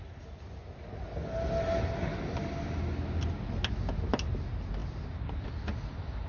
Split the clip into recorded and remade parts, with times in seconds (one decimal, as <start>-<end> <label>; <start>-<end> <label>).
0.0-6.3 recorded